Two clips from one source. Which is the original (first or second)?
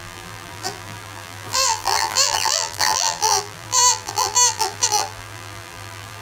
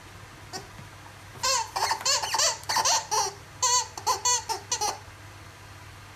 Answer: second